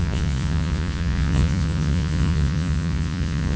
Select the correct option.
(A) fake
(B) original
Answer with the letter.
A